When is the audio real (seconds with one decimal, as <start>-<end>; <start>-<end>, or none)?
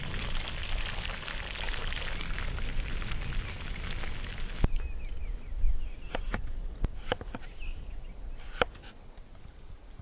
0.0-10.0